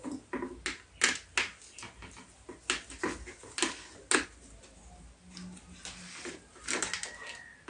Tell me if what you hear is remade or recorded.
recorded